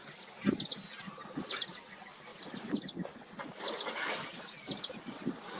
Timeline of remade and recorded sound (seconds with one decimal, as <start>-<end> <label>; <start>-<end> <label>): 0.0-5.6 recorded